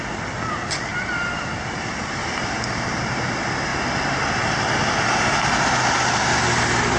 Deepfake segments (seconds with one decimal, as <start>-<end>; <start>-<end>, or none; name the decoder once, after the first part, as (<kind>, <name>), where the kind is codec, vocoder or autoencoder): none